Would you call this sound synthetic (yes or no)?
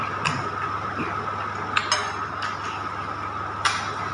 no